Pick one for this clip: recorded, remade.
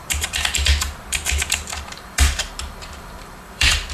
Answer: remade